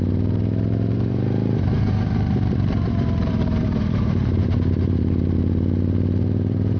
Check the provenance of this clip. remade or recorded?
remade